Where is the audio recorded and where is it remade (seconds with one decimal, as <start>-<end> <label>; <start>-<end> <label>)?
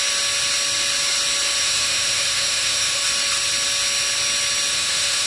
0.0-1.6 recorded; 1.6-3.0 remade; 3.0-4.7 recorded; 4.7-5.3 remade